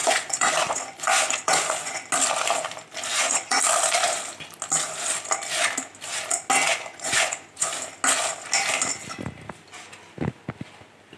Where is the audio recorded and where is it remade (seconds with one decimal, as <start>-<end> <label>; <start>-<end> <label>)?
0.0-2.1 remade; 2.1-3.1 recorded; 3.1-3.6 remade; 3.6-6.7 recorded; 6.7-7.7 remade; 7.7-11.2 recorded